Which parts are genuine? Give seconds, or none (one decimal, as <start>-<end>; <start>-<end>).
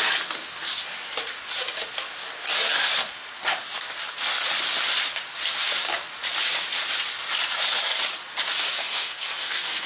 0.0-8.8